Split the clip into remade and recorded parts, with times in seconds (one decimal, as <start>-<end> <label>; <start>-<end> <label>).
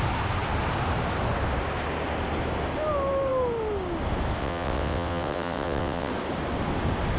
0.0-4.4 recorded; 4.4-6.1 remade; 6.1-7.2 recorded